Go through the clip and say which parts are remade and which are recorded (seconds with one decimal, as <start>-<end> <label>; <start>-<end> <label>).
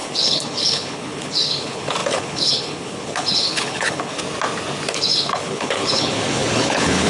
0.0-4.2 remade; 4.2-4.9 recorded; 4.9-7.1 remade